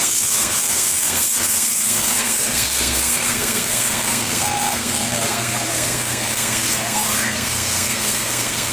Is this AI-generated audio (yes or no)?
yes